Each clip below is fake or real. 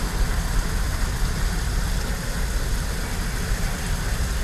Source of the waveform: real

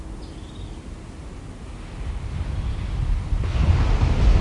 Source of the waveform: real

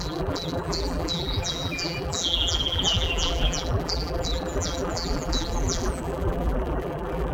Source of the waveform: fake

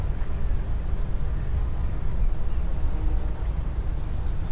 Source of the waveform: real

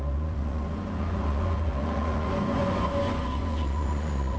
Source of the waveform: fake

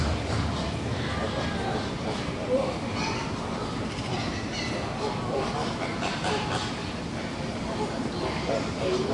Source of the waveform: real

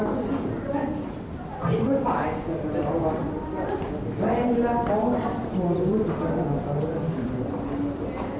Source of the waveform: real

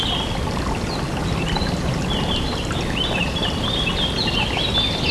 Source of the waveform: real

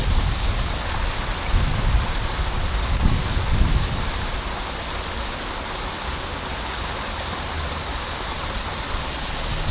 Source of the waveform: real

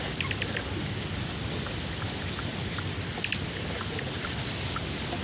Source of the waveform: real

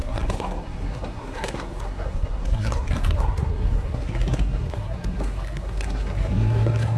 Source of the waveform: fake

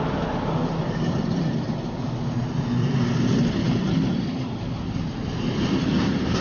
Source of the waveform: real